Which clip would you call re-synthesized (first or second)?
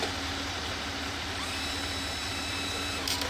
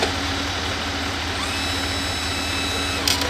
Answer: first